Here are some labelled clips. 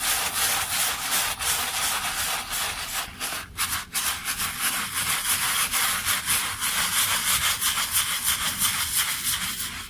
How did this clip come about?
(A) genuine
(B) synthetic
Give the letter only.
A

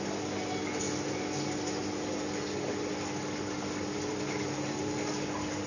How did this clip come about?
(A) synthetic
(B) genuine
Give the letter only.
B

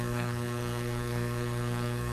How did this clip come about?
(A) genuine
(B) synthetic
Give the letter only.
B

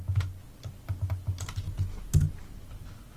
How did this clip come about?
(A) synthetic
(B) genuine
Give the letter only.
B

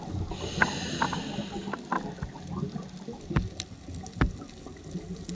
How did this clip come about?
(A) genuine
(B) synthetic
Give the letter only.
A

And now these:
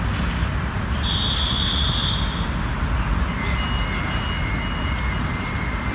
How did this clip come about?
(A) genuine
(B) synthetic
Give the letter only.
A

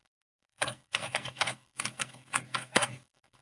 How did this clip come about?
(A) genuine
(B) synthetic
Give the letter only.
B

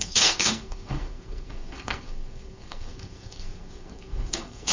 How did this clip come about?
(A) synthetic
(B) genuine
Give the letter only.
A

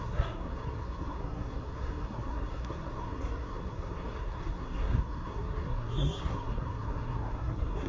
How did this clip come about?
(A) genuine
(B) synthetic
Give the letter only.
B